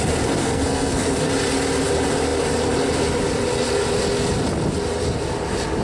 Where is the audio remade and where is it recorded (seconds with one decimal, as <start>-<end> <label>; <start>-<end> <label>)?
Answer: 0.0-0.4 recorded; 0.4-1.3 remade; 1.3-5.8 recorded